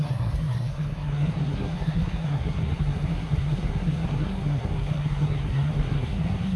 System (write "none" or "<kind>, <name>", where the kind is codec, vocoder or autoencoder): codec, SNAC